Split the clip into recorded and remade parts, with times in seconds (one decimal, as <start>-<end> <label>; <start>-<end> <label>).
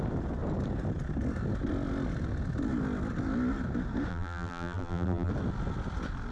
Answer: 0.0-4.1 recorded; 4.1-5.3 remade; 5.3-6.3 recorded